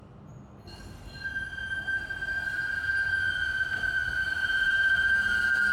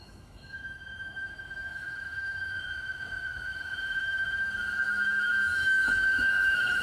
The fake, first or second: second